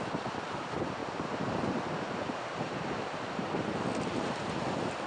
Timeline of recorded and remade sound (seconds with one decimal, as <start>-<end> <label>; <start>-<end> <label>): 0.0-1.0 recorded; 1.0-3.5 remade; 3.5-5.1 recorded